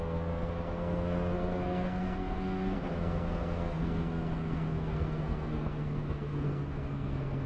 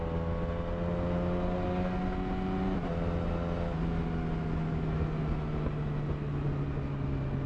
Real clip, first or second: second